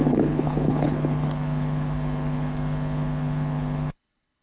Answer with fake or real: fake